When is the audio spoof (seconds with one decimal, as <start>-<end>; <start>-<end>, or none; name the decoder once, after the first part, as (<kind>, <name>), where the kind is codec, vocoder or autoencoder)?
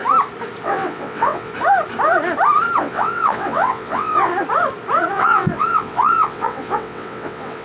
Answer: 0.6-1.5 (vocoder, WaveNeXt); 2.8-4.3; 5.1-7.6